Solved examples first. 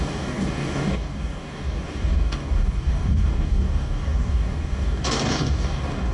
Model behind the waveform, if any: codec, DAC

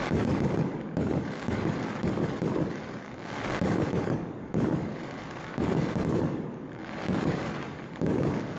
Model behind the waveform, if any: codec, DAC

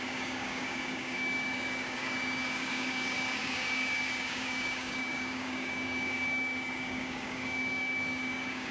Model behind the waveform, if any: codec, DAC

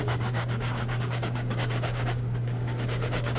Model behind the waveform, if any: codec, DAC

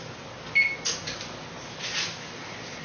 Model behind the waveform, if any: none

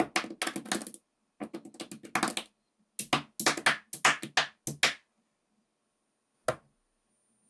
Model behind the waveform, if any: none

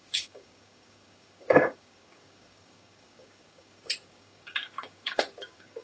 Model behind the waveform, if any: codec, DAC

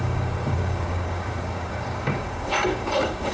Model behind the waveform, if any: codec, DAC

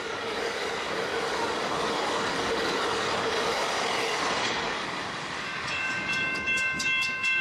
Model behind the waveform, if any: codec, DAC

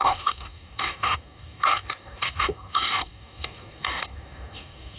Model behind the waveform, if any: codec, DAC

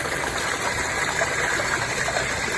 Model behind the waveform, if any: none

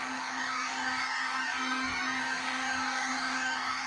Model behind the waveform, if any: codec, DAC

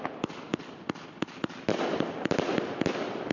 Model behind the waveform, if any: none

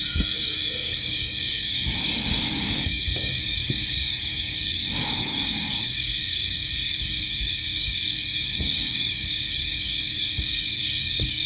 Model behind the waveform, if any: codec, DAC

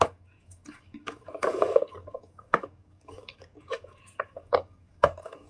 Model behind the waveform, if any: codec, DAC